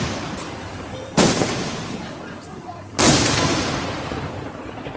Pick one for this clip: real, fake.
fake